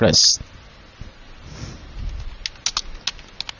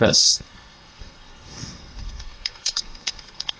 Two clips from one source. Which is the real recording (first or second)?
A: first